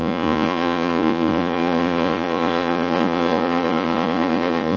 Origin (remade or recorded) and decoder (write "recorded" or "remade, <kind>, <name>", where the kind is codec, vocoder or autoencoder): remade, vocoder, Vocos